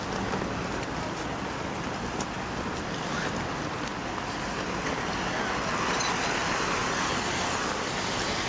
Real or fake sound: real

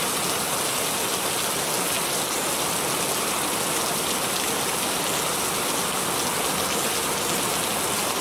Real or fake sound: real